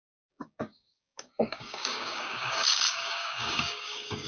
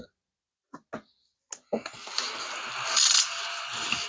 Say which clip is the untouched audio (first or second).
second